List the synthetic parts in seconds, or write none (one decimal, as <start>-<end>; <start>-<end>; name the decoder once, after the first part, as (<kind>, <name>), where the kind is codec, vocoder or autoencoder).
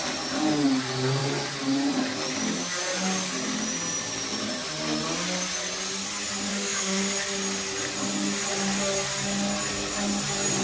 6.5-7.0 (autoencoder, DAC-VAE)